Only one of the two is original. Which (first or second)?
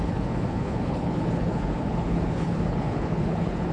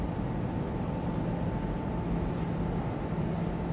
second